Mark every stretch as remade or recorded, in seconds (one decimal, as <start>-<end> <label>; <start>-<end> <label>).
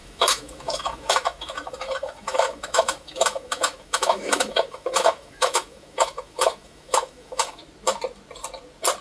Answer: 0.0-7.6 remade; 7.6-9.0 recorded